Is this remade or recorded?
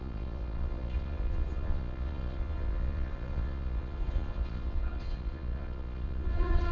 remade